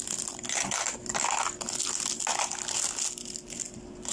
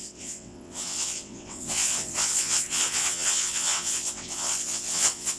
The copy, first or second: second